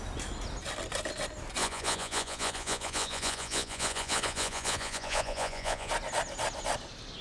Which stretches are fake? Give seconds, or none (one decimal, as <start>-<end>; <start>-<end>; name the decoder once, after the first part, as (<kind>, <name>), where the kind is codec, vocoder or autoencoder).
1.6-5.9 (vocoder, Vocos)